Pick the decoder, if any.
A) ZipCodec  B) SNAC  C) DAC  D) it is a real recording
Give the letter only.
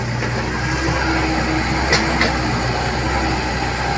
D